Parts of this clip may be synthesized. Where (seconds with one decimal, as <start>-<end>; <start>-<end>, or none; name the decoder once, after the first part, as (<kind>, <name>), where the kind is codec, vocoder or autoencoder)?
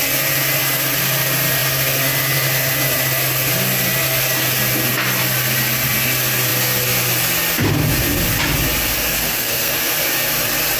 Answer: 9.2-9.7 (codec, SNAC)